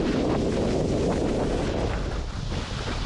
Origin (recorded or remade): recorded